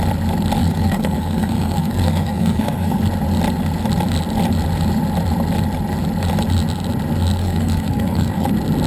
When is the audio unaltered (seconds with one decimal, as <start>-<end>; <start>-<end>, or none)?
0.0-0.6; 3.0-7.4; 8.5-8.9